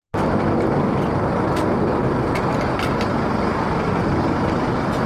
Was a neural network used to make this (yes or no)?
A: no